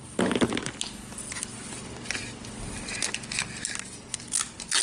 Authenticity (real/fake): real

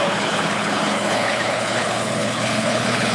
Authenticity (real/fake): fake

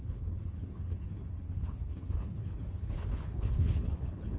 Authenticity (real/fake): fake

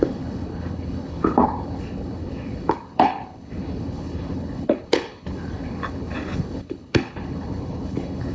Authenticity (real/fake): fake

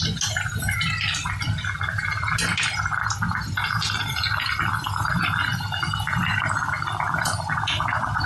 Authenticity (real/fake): real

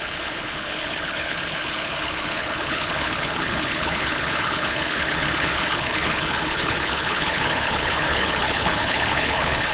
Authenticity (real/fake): fake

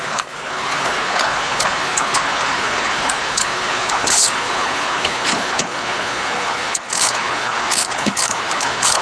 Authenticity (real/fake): fake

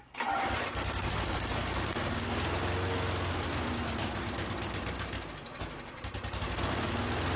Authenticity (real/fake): real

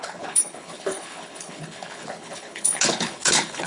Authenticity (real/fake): fake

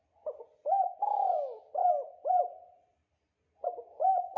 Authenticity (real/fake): real